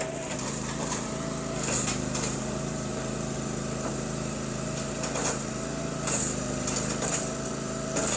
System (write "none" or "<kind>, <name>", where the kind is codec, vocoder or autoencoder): vocoder, BigVGAN v2